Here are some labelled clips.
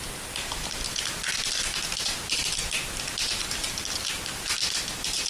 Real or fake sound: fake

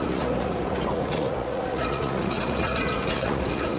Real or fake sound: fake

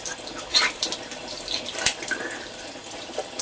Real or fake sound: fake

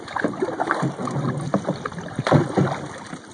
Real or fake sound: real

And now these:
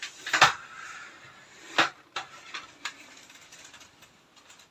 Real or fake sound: real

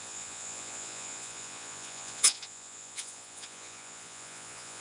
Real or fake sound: fake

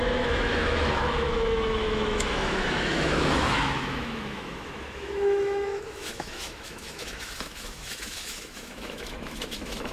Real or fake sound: fake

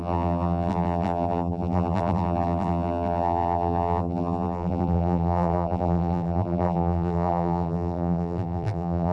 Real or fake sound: fake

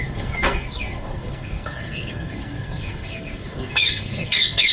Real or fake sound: fake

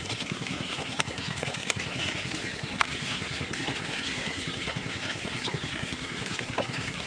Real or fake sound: fake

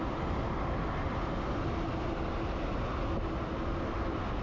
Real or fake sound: real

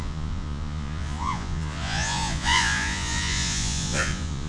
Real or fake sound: fake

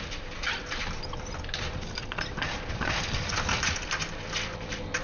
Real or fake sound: real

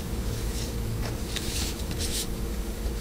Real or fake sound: fake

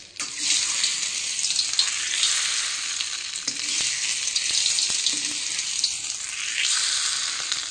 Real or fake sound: real